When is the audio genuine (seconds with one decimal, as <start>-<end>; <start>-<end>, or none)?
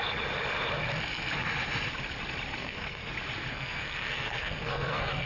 0.0-2.6; 3.1-3.5